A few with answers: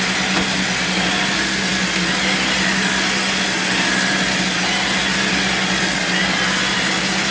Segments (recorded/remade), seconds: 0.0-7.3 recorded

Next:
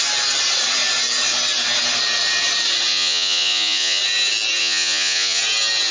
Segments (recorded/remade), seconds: 0.0-2.9 recorded; 2.9-4.0 remade; 4.0-4.6 recorded; 4.6-5.4 remade; 5.4-5.9 recorded